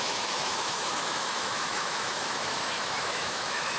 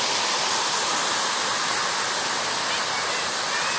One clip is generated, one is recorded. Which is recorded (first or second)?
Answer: second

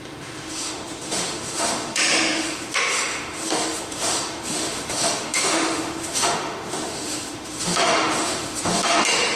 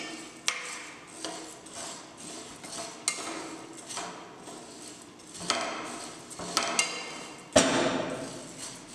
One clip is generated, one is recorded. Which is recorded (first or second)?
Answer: second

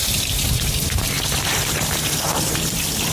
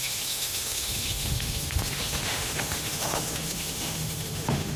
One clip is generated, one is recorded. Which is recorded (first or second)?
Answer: first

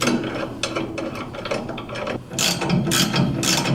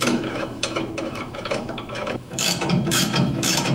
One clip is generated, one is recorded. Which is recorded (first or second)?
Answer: first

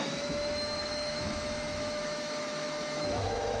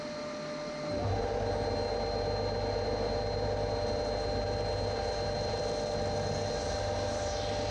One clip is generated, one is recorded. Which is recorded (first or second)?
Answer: second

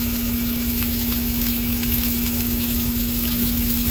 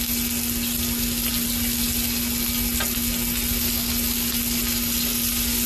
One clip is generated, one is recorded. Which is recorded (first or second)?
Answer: second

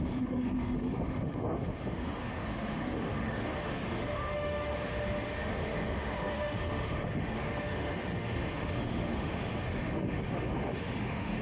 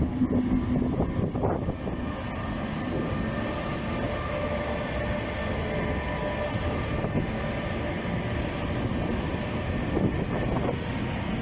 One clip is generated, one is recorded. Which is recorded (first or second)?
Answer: second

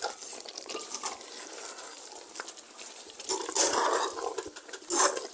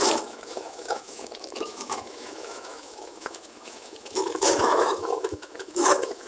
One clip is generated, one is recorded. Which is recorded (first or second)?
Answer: first